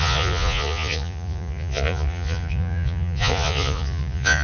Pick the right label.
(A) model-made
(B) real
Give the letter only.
A